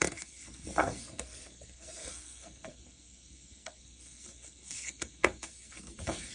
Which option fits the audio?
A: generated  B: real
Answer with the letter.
A